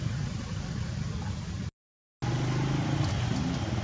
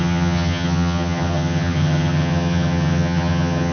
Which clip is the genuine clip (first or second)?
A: first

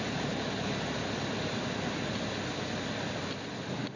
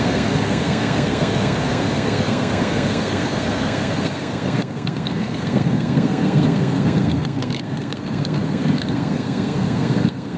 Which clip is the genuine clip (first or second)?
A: first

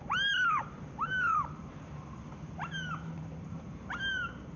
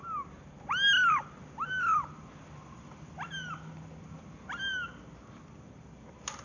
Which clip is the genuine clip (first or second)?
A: second